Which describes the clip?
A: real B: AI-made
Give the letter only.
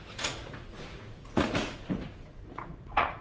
B